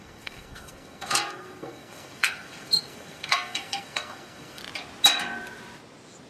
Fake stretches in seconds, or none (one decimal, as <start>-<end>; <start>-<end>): 0.0-4.6